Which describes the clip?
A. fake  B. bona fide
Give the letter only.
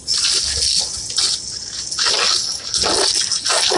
B